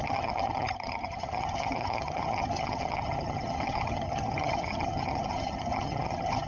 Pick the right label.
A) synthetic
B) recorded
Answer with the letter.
A